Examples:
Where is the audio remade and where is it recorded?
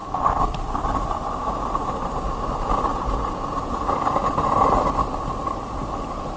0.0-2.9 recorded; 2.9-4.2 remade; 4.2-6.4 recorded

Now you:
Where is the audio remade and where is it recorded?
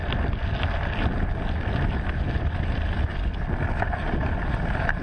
0.0-5.0 recorded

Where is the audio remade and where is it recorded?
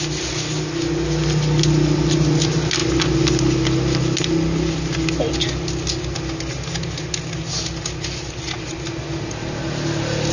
0.0-10.3 recorded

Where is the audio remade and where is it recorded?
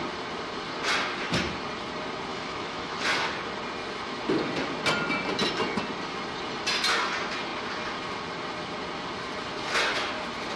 0.0-2.3 recorded; 2.3-3.0 remade; 3.0-10.6 recorded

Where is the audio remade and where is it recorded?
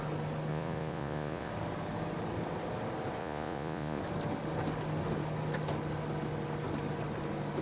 0.0-0.5 recorded; 0.5-1.5 remade; 1.5-3.2 recorded; 3.2-4.0 remade; 4.0-7.6 recorded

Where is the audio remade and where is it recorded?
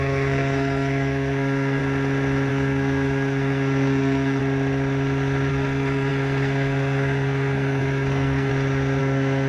0.0-1.8 remade; 1.8-2.5 recorded; 2.5-4.4 remade; 4.4-5.5 recorded; 5.5-8.5 remade; 8.5-9.0 recorded; 9.0-9.5 remade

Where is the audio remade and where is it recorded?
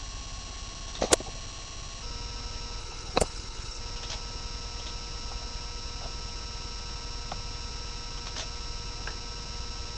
0.0-2.8 recorded; 2.8-3.8 remade; 3.8-10.0 recorded